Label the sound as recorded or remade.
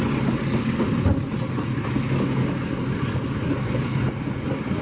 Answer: recorded